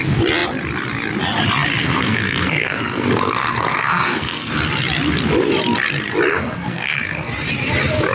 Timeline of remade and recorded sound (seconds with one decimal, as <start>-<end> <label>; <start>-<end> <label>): 0.0-1.8 recorded; 1.8-4.5 remade; 4.5-6.3 recorded; 6.3-7.3 remade; 7.3-8.1 recorded